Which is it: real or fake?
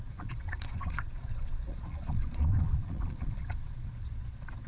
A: fake